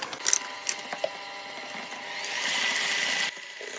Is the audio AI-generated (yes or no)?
no